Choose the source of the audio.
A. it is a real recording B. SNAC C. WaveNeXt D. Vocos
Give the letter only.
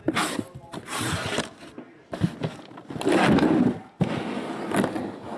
A